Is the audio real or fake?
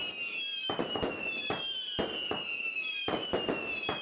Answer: real